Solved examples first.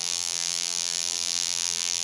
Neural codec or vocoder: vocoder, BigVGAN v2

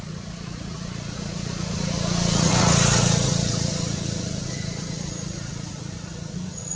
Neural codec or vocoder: vocoder, Vocos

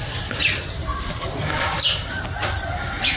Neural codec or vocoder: none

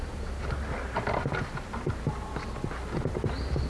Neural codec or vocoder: none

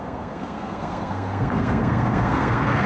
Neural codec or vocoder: codec, SNAC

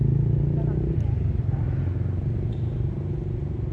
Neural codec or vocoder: none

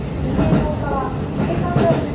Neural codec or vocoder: none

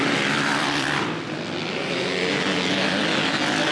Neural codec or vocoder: none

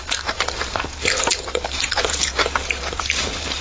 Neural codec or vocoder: vocoder, BigVGAN v2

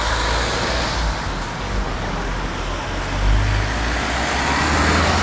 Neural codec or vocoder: none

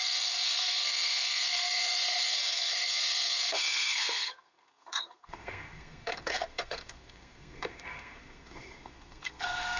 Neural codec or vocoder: codec, SNAC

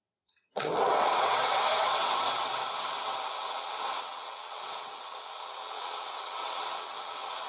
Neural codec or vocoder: vocoder, WaveNeXt